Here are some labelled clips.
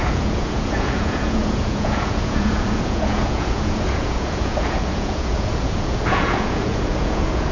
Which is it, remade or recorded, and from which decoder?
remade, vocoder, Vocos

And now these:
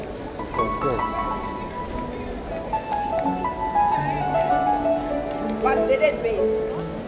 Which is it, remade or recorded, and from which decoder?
recorded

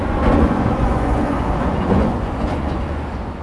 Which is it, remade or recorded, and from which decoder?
remade, vocoder, Vocos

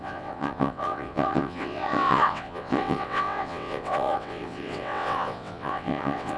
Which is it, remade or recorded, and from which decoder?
remade, vocoder, WaveNeXt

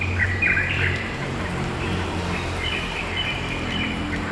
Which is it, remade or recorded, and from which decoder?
remade, vocoder, BigVGAN v2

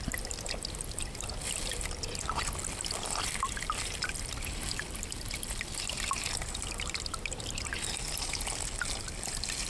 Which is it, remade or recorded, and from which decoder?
recorded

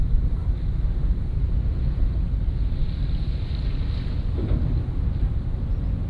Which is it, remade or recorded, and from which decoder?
recorded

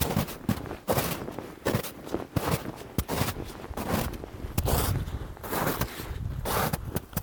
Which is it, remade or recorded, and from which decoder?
recorded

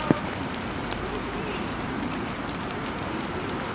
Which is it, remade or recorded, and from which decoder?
remade, vocoder, BigVGAN v2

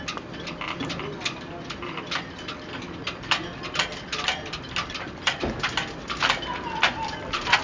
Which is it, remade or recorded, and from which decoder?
recorded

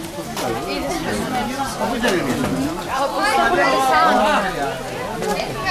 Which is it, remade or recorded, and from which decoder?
recorded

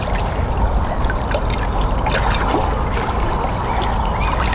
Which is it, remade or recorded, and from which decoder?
recorded